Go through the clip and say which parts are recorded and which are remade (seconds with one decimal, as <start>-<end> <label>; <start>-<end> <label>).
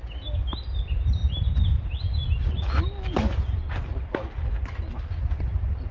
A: 0.0-5.9 recorded